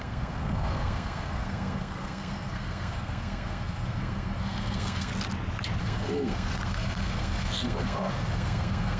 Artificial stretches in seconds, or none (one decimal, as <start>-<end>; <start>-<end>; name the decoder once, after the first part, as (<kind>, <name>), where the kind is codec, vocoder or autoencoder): 0.0-5.1 (codec, SNAC); 5.8-9.0